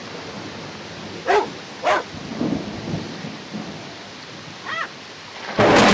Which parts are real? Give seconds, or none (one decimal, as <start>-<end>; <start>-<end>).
0.0-5.9